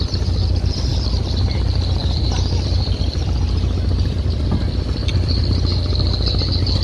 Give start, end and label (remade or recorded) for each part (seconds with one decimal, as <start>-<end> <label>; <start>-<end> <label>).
0.0-0.9 recorded; 0.9-1.6 remade; 1.6-2.0 recorded; 2.0-5.4 remade; 5.4-6.8 recorded